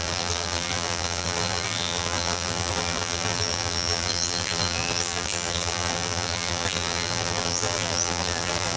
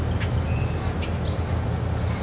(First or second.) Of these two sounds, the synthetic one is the first